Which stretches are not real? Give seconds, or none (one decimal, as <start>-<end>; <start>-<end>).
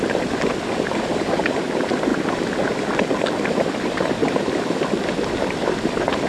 none